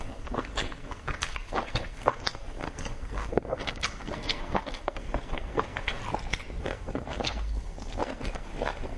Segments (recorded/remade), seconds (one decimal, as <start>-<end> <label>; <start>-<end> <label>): 0.0-6.0 remade; 6.0-6.6 recorded; 6.6-9.0 remade